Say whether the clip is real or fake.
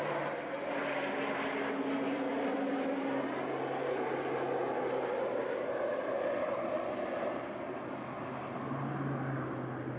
real